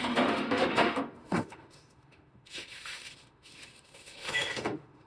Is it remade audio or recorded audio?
remade